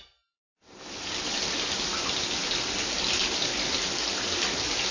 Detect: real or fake real